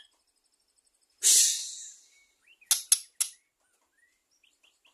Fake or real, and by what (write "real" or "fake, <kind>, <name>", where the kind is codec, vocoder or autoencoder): real